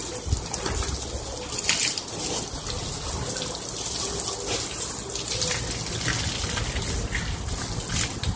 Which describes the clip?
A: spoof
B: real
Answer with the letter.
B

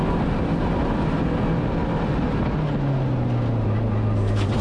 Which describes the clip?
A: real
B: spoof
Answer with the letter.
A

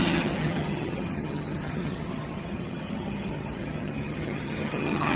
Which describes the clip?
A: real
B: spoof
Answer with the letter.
B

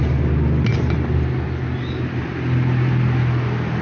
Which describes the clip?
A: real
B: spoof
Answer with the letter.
A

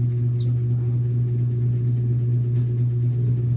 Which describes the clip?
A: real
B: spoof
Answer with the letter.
A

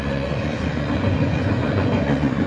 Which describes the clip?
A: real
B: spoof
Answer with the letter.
B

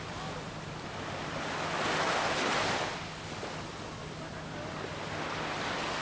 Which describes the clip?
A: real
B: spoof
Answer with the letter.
A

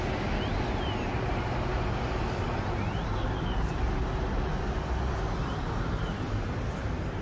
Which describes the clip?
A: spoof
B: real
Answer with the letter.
B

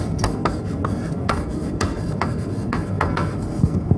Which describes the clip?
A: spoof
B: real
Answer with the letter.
A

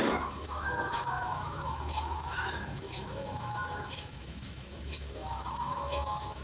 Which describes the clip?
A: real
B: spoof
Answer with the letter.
B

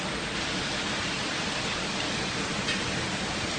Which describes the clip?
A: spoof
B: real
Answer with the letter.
B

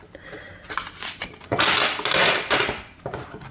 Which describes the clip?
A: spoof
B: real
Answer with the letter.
B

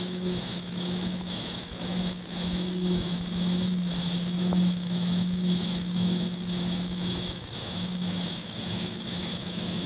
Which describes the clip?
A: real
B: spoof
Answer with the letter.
B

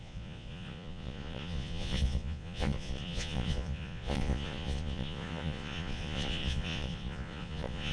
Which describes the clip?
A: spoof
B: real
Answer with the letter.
A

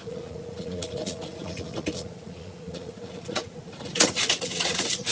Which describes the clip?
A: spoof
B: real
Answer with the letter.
A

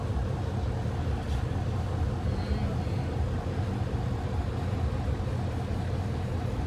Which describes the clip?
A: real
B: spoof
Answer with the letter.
A